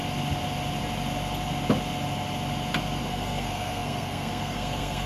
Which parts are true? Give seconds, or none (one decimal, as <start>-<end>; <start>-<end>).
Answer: 0.0-3.0